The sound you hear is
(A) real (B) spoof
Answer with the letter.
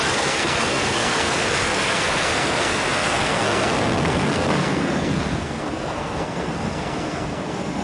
B